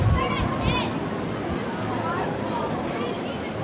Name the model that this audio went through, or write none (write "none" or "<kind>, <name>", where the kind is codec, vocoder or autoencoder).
none